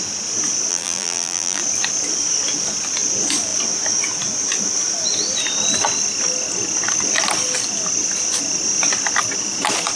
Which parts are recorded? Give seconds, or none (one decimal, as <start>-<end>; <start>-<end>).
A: 0.0-0.7; 1.6-10.0